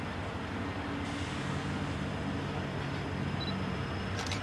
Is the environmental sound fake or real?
real